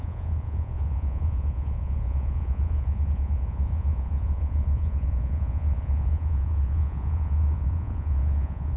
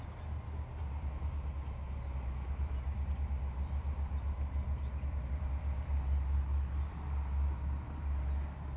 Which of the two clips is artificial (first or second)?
first